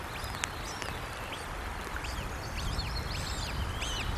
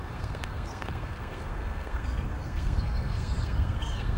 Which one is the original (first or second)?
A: first